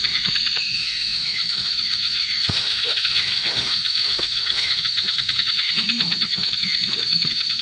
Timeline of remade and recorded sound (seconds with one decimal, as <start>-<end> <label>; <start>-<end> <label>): 0.0-7.6 remade